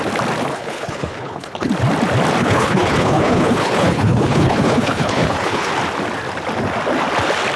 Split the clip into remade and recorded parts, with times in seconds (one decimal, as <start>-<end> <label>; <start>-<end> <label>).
0.0-0.5 recorded; 0.5-1.7 remade; 1.7-2.4 recorded; 2.4-5.7 remade; 5.7-7.6 recorded